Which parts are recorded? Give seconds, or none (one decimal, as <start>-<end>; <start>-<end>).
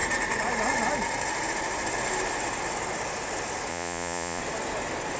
0.0-3.7; 4.4-5.2